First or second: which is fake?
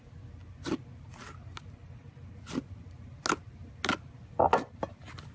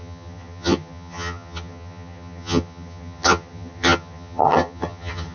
second